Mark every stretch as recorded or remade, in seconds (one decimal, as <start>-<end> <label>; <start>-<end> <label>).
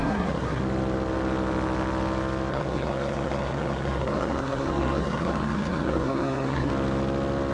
0.0-0.6 remade; 0.6-2.5 recorded; 2.5-6.7 remade; 6.7-7.5 recorded